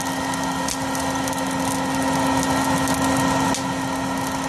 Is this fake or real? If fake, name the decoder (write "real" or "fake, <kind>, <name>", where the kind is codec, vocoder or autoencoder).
real